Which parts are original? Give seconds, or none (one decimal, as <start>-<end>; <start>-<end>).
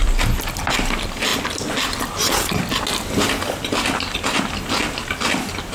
0.0-5.7